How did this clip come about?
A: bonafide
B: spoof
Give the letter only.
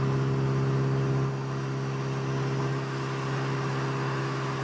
A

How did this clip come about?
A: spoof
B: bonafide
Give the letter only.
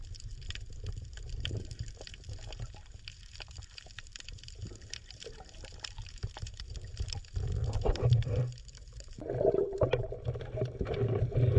A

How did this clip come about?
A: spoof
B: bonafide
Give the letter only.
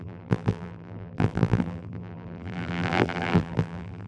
A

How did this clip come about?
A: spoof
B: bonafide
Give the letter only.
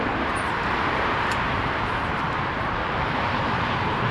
A